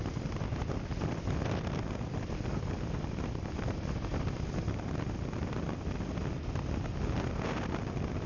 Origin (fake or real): real